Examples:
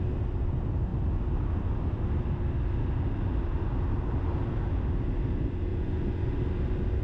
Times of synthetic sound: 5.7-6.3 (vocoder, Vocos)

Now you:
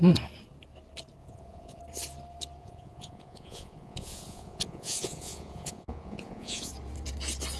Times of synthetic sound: 1.2-1.8 (vocoder, Vocos); 2.6-6.7